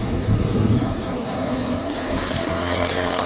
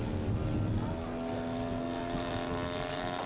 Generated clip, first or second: first